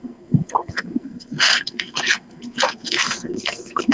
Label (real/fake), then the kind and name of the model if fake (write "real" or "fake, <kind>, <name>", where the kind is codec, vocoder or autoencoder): fake, codec, SNAC